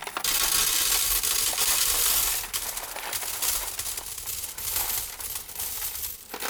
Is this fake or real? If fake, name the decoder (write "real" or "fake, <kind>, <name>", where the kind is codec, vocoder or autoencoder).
real